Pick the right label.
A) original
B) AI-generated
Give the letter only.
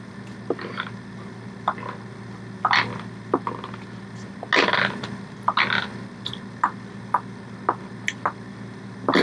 A